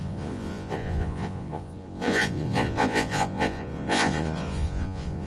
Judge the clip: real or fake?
fake